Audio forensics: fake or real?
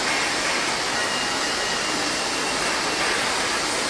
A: real